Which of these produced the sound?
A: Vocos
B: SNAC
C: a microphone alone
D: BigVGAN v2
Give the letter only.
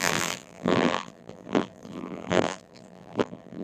D